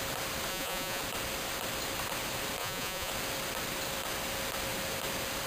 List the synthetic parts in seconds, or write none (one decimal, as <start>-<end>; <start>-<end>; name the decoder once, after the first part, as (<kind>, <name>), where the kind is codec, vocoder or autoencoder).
0.5-1.0 (vocoder, Vocos); 2.6-3.1